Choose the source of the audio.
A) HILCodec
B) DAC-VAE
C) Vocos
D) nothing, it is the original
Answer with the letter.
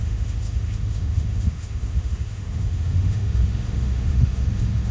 B